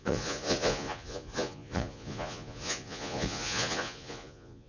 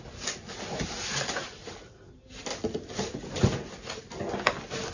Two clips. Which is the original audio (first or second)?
second